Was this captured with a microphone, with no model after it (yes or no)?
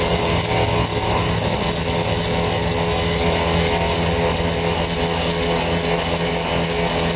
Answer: yes